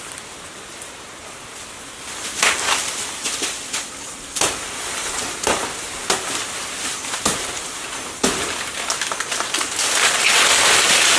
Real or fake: real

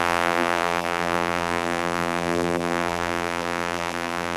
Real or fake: fake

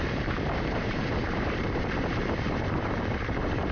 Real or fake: fake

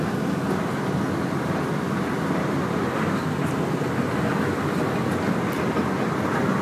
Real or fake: real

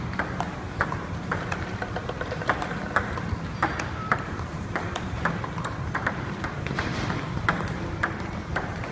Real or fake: fake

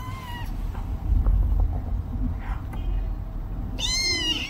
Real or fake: real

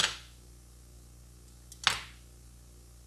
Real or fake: real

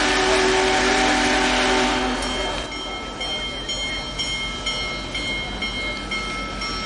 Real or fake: real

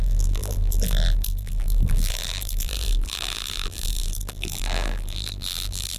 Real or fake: fake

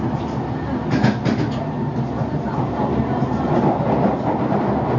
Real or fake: real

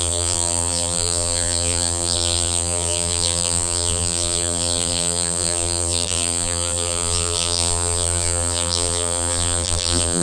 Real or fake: fake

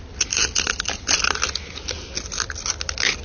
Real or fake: real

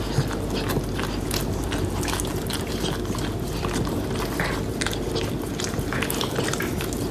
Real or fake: real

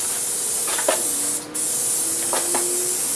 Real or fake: real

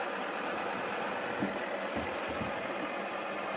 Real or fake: real